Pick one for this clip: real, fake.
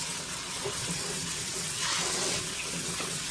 fake